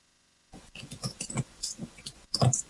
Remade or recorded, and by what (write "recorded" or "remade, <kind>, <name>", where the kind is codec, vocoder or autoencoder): remade, vocoder, Vocos